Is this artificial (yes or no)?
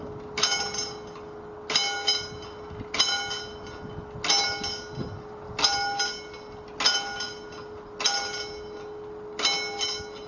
no